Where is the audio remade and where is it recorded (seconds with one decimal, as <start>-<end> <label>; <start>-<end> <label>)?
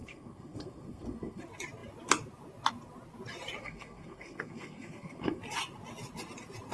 0.0-1.4 remade; 1.4-3.6 recorded; 3.6-5.4 remade; 5.4-6.7 recorded